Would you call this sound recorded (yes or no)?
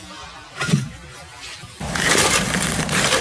no